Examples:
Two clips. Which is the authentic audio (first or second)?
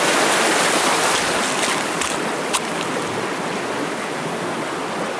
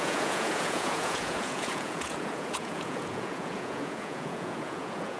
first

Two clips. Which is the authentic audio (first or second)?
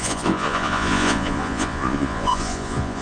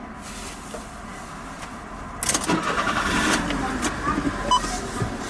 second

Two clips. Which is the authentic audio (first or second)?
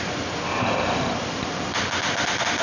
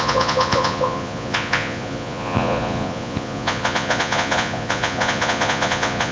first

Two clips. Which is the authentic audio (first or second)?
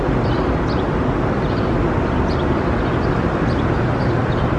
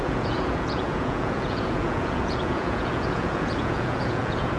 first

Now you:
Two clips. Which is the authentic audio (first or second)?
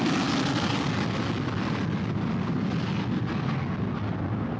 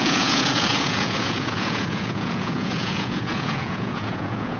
first